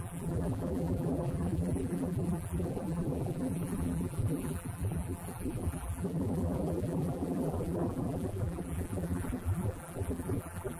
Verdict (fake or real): fake